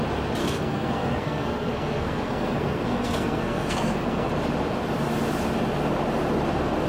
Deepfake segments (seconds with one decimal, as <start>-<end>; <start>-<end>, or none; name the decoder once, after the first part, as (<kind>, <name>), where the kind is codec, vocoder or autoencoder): 0.4-4.3 (codec, SNAC)